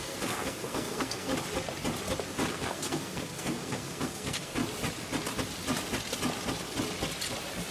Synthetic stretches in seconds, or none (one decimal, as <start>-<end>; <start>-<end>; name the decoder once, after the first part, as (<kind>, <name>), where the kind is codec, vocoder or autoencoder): 0.0-1.3 (codec, SNAC); 2.5-4.6